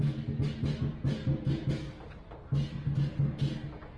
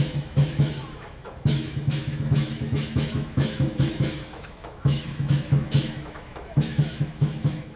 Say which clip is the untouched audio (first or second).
first